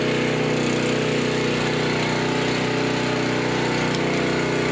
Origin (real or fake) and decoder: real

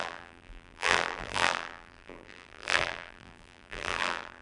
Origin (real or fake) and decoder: fake, vocoder, BigVGAN v2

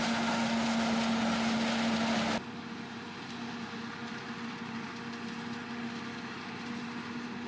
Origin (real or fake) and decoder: real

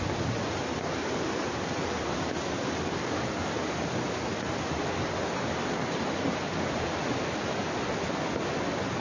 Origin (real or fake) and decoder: real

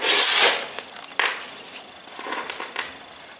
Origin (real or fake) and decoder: real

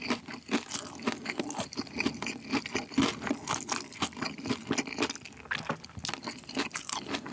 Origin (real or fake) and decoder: real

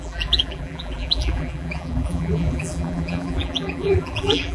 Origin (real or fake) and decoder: fake, vocoder, BigVGAN v2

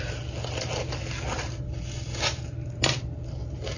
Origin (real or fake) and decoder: real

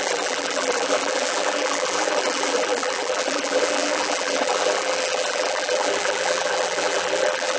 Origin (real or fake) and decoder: fake, vocoder, BigVGAN v2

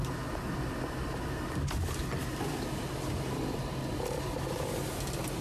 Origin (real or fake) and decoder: fake, vocoder, BigVGAN v2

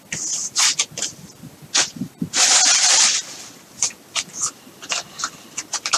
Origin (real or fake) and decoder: fake, vocoder, BigVGAN v2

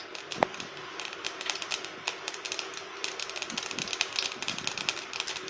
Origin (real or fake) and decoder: real